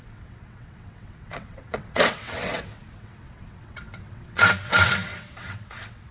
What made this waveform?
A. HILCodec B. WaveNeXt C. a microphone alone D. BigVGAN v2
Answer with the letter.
B